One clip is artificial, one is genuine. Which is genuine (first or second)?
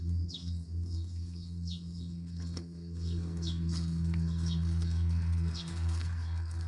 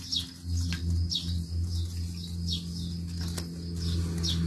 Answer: second